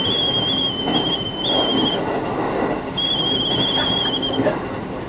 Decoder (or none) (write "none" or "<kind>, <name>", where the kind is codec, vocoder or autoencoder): none